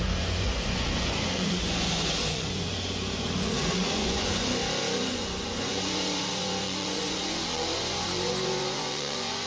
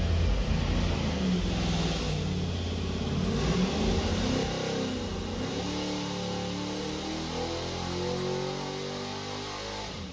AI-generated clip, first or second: first